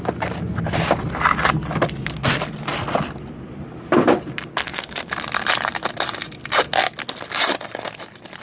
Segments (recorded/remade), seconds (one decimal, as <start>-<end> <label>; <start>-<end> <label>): 0.0-4.5 recorded; 4.5-5.1 remade; 5.1-8.4 recorded